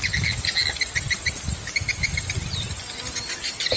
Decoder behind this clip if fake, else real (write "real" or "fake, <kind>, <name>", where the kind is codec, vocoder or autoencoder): real